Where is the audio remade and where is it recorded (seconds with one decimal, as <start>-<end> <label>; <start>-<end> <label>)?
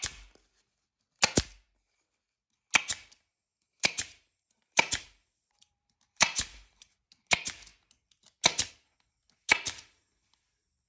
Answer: 0.0-3.5 recorded; 3.5-7.0 remade; 7.0-10.9 recorded